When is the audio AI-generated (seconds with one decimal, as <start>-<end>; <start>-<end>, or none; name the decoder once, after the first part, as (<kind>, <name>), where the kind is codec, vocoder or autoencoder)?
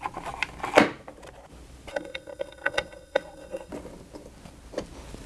1.9-3.7 (codec, SNAC)